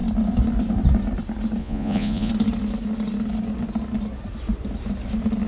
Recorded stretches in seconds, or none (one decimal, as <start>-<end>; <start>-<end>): 0.0-1.6; 2.3-5.5